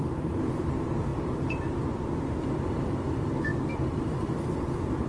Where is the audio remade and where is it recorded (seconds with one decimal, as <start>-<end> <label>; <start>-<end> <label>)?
0.0-5.1 recorded